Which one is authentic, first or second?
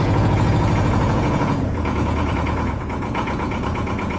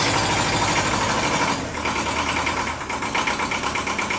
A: second